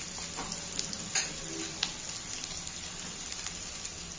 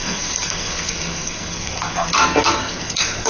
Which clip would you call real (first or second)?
first